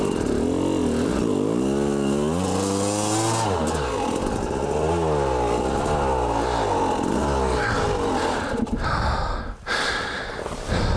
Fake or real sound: real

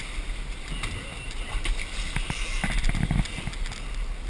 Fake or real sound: real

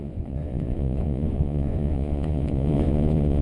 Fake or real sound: fake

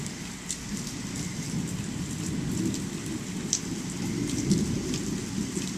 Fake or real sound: real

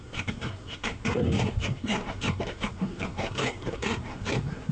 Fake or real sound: fake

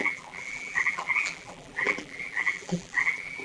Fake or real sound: fake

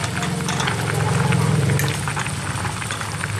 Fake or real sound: real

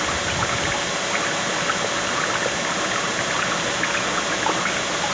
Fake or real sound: real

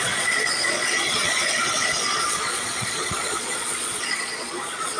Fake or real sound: fake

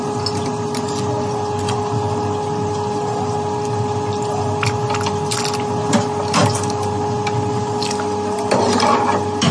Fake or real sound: real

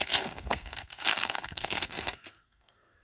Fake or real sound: fake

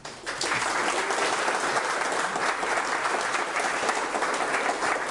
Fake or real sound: fake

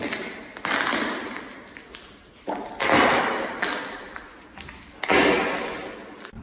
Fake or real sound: real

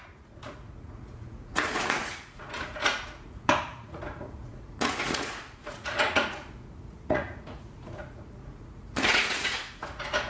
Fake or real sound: fake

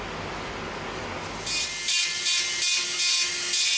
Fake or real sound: real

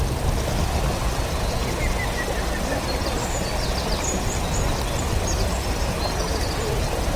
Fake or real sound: real